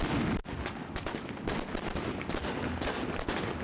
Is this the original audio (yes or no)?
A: yes